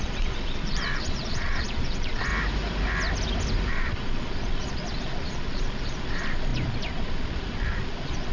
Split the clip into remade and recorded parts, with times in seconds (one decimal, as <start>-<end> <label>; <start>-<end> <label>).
0.0-2.3 remade; 2.3-3.7 recorded; 3.7-8.3 remade